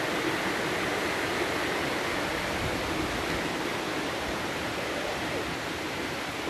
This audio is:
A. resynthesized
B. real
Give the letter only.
B